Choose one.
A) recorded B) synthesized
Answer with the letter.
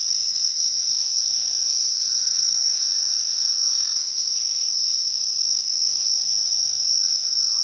B